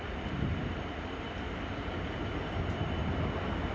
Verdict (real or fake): real